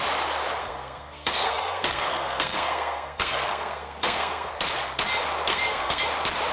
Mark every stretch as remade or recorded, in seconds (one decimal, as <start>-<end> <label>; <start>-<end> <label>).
0.0-0.6 recorded; 0.6-4.5 remade; 4.5-5.5 recorded; 5.5-6.0 remade; 6.0-6.5 recorded